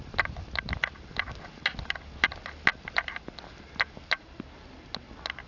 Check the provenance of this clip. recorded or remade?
recorded